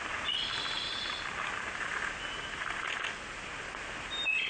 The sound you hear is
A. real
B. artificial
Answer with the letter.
A